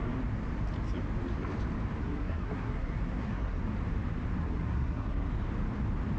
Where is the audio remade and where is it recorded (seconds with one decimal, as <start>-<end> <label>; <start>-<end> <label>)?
0.0-2.0 recorded; 2.0-3.6 remade; 3.6-4.4 recorded; 4.4-5.3 remade; 5.3-6.2 recorded